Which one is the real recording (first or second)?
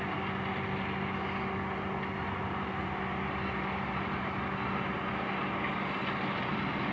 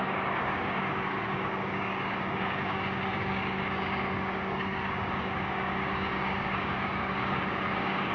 first